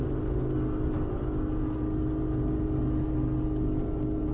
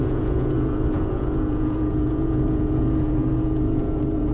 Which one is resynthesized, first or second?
second